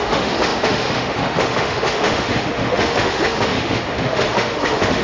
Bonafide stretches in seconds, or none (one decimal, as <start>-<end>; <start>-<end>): none